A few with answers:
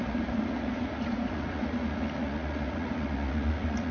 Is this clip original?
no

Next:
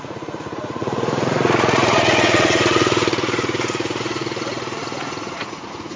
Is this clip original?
no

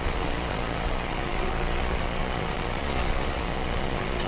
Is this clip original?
no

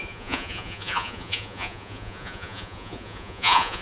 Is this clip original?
no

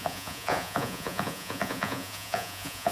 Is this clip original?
no